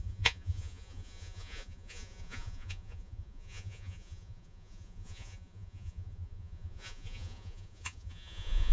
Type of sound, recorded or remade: remade